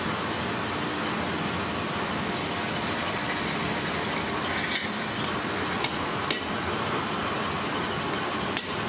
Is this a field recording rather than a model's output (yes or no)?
yes